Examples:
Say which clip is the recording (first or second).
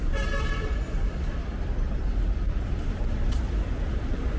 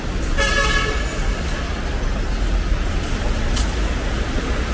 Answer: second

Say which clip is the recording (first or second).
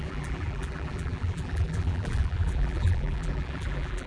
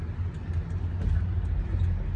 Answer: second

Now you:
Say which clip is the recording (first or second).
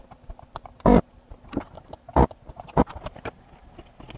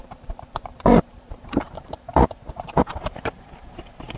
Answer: first